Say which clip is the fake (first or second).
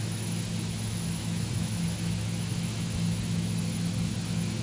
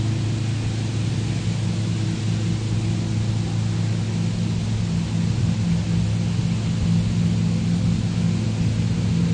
first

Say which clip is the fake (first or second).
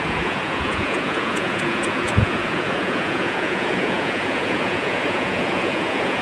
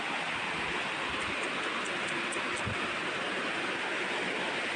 first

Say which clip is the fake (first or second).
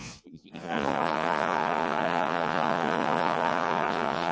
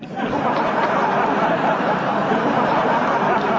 first